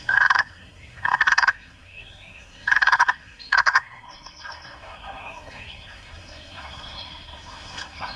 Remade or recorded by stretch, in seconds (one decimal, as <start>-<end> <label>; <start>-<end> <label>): 0.0-8.2 remade